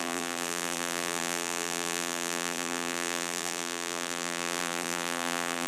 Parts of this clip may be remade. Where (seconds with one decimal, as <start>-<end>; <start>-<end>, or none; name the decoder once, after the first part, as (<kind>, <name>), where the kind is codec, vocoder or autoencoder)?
0.0-5.7 (vocoder, BigVGAN v2)